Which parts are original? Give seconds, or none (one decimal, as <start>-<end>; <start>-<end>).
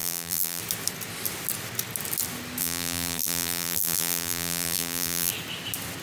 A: 0.6-2.6; 5.3-6.0